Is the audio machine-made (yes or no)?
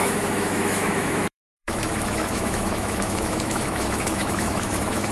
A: yes